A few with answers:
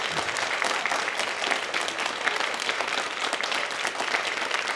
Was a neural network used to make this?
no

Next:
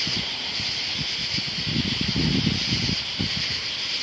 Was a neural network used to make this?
no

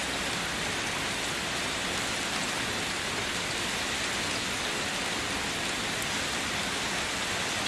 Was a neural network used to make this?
no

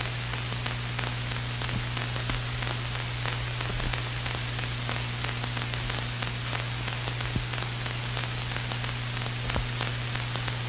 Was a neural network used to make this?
no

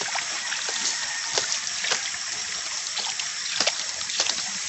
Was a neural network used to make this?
yes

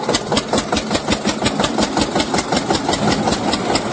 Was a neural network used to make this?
no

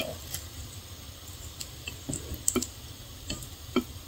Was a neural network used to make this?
no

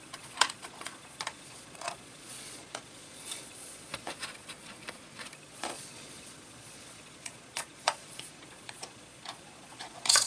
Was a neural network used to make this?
yes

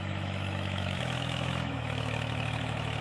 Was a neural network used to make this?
yes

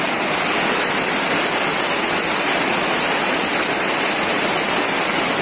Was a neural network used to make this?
no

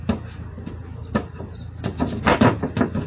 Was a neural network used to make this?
no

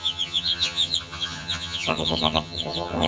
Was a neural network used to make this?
yes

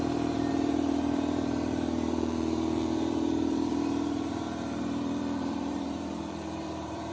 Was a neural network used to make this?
yes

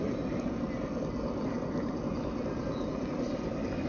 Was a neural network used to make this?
no